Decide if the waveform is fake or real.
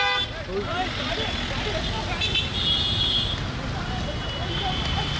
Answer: real